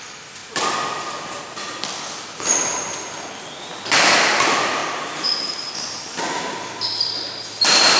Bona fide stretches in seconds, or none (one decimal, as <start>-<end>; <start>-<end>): 0.0-8.0